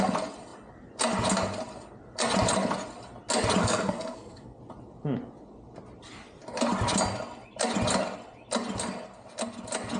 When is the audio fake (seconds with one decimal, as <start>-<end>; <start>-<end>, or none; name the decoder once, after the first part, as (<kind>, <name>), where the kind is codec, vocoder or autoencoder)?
3.6-4.6 (codec, SNAC)